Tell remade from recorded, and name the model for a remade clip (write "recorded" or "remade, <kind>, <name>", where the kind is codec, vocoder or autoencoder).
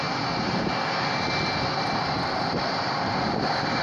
recorded